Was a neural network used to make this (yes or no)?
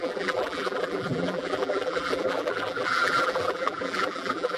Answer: yes